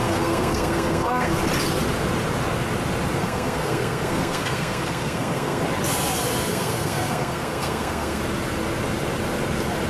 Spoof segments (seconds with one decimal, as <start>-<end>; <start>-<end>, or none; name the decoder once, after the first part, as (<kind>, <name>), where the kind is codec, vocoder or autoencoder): 0.0-1.4 (codec, SNAC); 3.2-5.6; 6.5-8.2